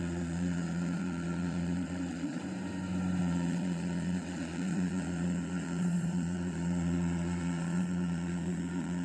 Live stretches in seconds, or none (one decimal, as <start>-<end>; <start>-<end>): 2.4-3.2